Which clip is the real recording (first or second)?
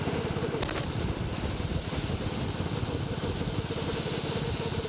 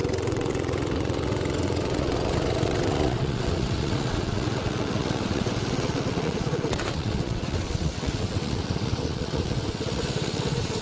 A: first